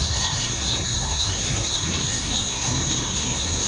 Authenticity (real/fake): fake